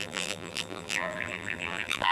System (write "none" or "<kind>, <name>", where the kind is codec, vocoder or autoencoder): vocoder, BigVGAN v2